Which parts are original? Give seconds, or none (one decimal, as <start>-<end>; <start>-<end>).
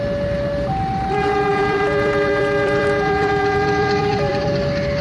0.0-1.5; 4.5-5.0